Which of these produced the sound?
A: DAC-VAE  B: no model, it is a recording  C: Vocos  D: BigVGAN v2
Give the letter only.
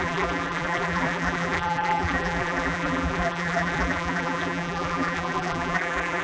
D